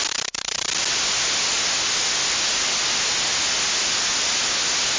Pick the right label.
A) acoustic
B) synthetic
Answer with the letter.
A